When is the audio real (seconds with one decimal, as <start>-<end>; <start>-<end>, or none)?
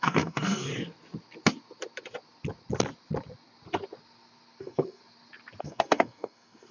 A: 0.7-4.6; 5.0-5.6